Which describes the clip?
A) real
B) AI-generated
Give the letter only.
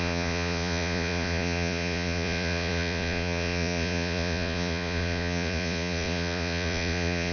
B